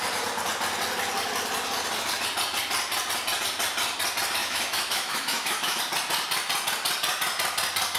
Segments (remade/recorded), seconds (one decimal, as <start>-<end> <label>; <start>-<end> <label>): 0.0-4.4 recorded; 4.4-5.8 remade; 5.8-8.0 recorded